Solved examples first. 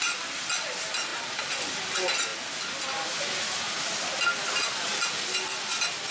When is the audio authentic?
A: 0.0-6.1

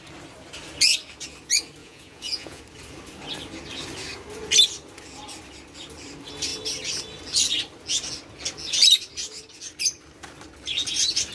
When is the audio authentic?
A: 0.0-1.8; 2.6-11.3